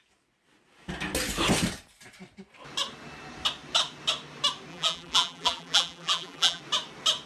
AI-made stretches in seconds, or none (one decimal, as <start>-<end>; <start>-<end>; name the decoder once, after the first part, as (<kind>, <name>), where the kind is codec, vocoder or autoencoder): 4.7-6.6 (vocoder, BigVGAN v2)